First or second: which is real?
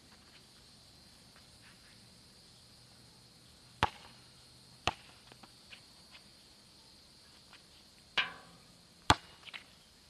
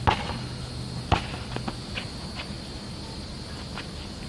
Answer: second